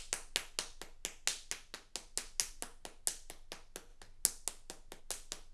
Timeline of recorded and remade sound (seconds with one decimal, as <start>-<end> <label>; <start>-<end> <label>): 0.0-5.5 recorded